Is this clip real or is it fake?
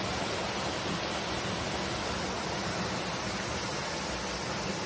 real